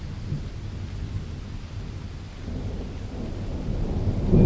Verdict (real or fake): real